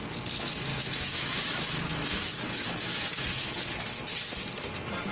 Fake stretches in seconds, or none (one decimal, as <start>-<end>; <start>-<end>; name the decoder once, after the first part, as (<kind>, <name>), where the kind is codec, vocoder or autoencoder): 0.7-3.6 (autoencoder, DAC-VAE)